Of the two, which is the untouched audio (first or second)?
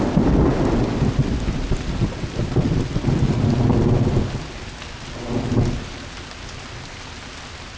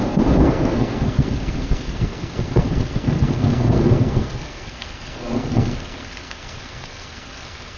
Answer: first